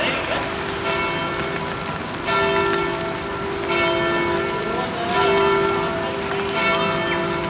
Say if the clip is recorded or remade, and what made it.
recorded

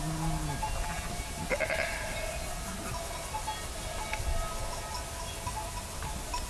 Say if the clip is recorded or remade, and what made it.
recorded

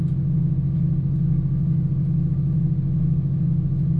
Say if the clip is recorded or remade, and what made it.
recorded